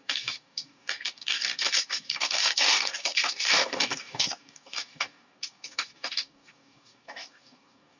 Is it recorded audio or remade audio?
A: remade